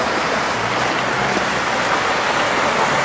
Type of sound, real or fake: real